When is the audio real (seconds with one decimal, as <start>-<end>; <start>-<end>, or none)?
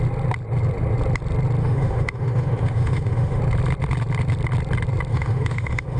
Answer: 0.0-1.6; 3.4-5.1